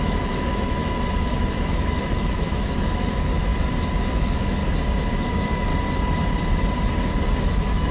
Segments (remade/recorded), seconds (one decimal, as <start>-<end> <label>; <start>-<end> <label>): 0.0-3.5 remade; 3.5-4.1 recorded; 4.1-4.6 remade; 4.6-5.3 recorded; 5.3-5.7 remade; 5.7-7.3 recorded; 7.3-7.9 remade